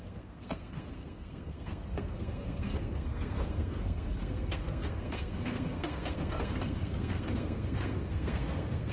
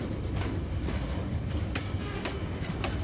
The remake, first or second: first